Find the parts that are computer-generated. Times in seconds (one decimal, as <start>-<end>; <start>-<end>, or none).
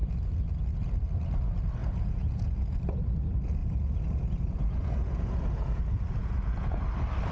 1.8-2.8; 3.6-5.8; 6.2-6.8